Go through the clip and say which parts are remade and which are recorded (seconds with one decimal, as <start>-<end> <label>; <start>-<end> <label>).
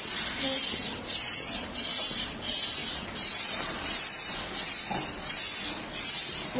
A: 0.0-6.6 recorded